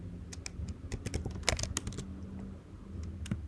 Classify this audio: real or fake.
real